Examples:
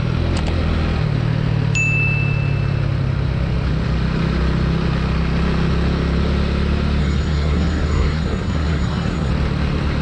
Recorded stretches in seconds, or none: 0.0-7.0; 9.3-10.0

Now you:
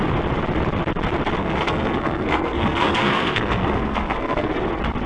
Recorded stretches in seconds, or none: 0.0-1.4; 4.5-5.1

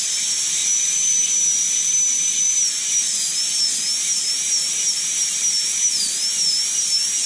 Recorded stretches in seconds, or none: 0.0-7.3

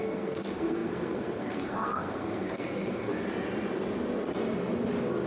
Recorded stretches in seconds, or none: 3.1-5.3

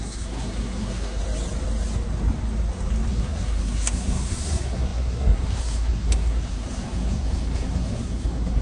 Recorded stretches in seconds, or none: 1.2-3.1

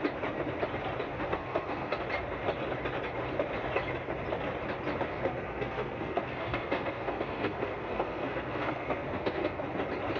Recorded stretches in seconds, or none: 0.0-1.1; 2.0-5.1; 9.6-10.2

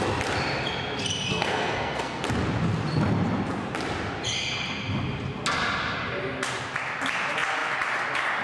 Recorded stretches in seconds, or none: 0.0-1.3; 2.2-8.4